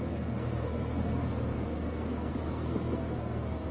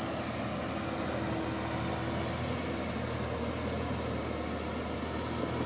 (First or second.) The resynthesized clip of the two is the first